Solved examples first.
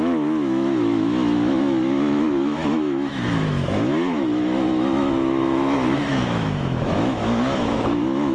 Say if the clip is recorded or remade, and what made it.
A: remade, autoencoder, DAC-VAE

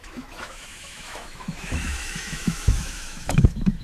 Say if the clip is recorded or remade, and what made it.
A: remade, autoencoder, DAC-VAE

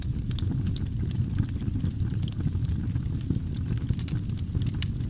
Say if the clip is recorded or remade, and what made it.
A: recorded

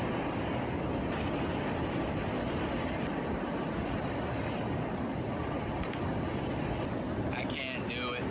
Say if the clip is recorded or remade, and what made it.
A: recorded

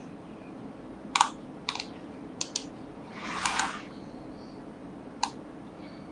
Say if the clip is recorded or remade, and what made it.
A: recorded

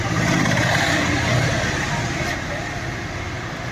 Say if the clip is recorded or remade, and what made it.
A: recorded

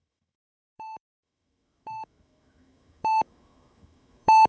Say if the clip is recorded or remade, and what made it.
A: remade, autoencoder, DAC-VAE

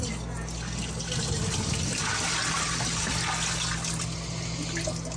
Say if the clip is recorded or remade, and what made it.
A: recorded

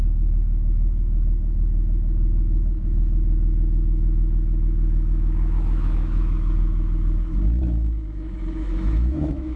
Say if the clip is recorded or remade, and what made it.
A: remade, autoencoder, DAC-VAE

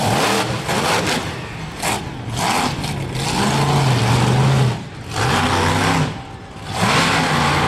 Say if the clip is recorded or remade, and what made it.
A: recorded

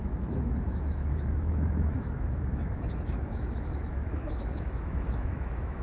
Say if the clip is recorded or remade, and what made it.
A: remade, autoencoder, DAC-VAE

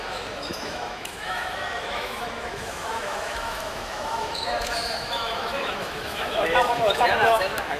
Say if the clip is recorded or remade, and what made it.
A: remade, autoencoder, DAC-VAE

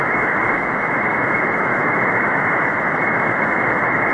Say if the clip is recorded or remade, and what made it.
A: remade, autoencoder, DAC-VAE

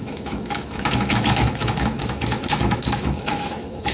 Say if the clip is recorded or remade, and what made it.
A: remade, autoencoder, DAC-VAE